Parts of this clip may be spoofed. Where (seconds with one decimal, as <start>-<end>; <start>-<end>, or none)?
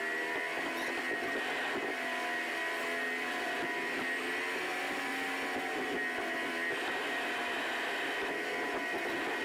none